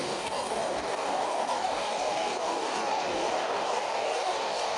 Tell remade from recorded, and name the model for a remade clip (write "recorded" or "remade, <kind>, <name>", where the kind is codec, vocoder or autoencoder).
remade, codec, DAC